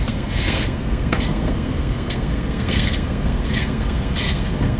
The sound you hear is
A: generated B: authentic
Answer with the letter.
A